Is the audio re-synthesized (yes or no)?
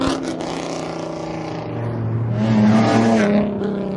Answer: no